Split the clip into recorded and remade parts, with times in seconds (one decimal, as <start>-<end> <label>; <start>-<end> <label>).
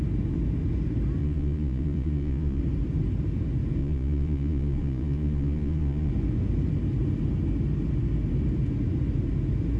0.0-1.2 recorded; 1.2-2.6 remade; 2.6-3.8 recorded; 3.8-6.1 remade; 6.1-9.8 recorded